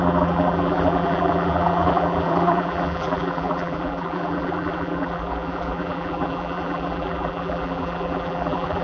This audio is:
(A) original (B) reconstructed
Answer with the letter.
B